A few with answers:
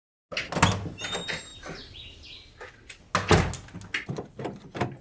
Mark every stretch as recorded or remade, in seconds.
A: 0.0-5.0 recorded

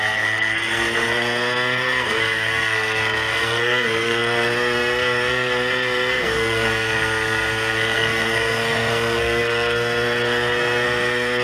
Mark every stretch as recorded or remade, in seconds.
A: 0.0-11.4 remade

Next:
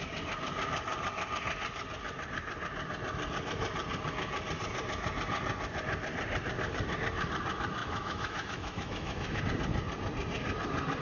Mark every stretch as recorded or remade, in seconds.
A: 0.0-7.8 recorded; 7.8-9.4 remade; 9.4-11.0 recorded

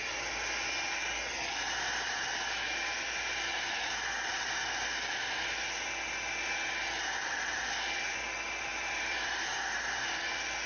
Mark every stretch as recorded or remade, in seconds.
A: 0.0-8.7 recorded; 8.7-9.4 remade; 9.4-10.7 recorded